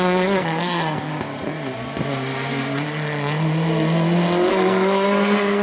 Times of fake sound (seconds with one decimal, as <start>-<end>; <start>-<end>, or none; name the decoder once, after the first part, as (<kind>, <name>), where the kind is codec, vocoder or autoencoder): 0.0-1.1 (codec, SNAC); 4.5-5.6